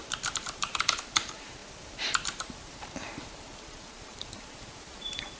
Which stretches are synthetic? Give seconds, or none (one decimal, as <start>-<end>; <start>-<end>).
0.0-5.4